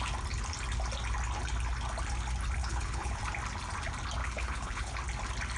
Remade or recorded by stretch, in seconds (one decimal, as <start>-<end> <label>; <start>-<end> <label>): 0.0-2.6 recorded; 2.6-3.2 remade; 3.2-4.2 recorded; 4.2-4.9 remade; 4.9-5.6 recorded